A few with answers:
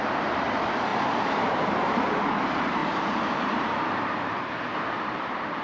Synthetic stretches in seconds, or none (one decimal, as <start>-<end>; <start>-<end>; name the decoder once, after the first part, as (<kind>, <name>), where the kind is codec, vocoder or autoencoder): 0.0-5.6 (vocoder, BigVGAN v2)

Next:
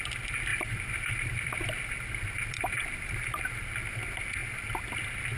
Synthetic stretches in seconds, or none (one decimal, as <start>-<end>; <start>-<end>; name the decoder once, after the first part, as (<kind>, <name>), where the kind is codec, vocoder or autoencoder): 0.5-3.7 (vocoder, BigVGAN v2)

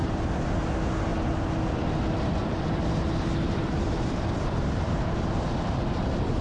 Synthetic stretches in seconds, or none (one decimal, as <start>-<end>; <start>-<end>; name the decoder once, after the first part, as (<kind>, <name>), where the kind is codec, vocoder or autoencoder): 2.4-5.5 (vocoder, BigVGAN v2)

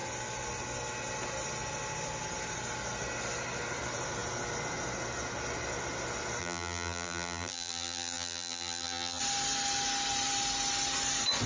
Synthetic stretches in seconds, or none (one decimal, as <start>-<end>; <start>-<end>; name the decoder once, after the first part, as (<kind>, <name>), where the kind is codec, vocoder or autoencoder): 6.4-9.2 (vocoder, BigVGAN v2)

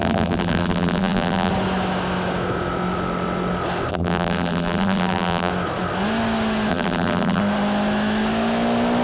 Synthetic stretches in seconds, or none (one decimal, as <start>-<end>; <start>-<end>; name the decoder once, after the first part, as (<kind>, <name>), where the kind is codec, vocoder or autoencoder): 0.0-1.5 (vocoder, BigVGAN v2); 3.9-5.5; 6.7-7.4

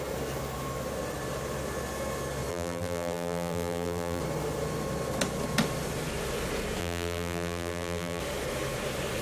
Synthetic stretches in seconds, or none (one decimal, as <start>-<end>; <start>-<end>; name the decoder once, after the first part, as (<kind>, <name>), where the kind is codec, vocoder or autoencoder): 2.5-4.2 (vocoder, BigVGAN v2); 6.8-8.2

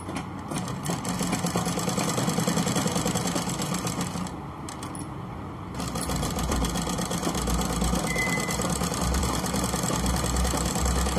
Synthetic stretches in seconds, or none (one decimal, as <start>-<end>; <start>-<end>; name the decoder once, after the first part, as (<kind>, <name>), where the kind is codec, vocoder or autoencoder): 0.0-11.2 (vocoder, BigVGAN v2)